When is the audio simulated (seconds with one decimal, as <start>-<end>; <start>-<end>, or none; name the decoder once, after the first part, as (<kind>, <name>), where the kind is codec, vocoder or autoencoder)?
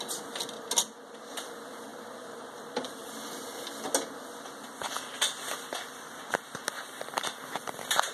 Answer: 1.9-3.1 (vocoder, BigVGAN v2)